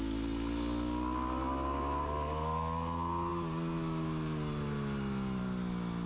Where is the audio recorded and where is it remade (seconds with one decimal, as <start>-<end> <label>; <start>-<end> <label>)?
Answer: 0.0-6.1 recorded